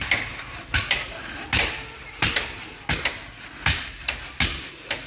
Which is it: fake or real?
real